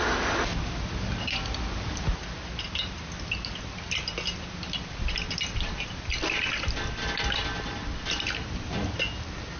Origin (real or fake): real